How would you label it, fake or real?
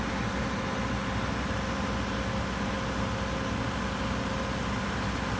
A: real